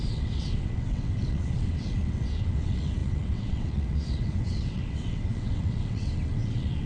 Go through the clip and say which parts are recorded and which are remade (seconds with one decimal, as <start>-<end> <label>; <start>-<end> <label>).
0.0-6.9 remade